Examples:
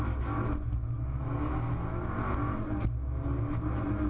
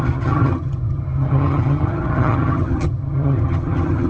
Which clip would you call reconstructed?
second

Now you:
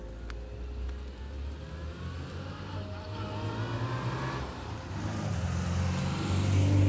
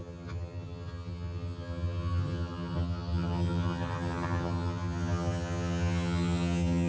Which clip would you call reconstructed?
second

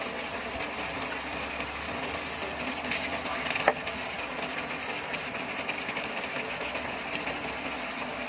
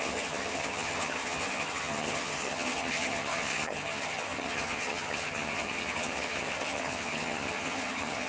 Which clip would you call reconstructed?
second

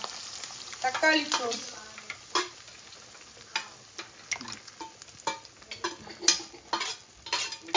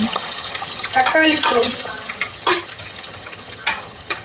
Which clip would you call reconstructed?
second